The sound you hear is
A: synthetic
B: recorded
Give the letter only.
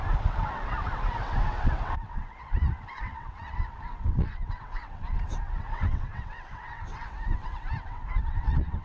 A